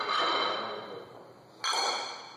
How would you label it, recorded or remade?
recorded